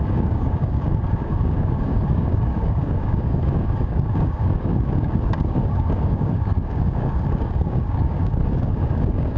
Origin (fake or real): fake